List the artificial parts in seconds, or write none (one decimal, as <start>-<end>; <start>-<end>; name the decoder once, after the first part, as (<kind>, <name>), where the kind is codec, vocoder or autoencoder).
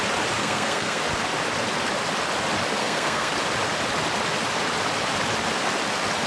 0.4-1.0 (codec, SNAC); 2.8-3.3